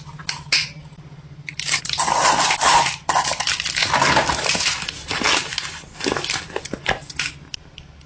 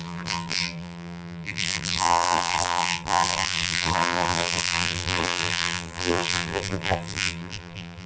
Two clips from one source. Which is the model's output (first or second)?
second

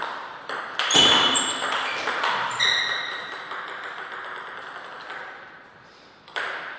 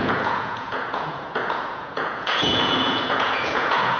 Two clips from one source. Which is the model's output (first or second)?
second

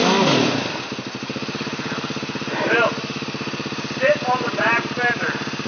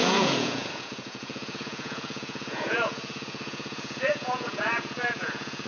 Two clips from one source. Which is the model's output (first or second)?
second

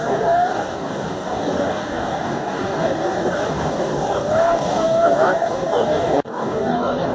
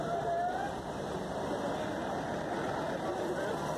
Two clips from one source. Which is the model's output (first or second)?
first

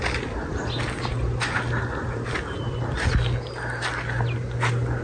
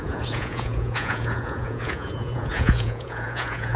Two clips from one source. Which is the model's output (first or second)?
second